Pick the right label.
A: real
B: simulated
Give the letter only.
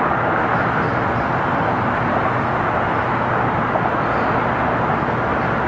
A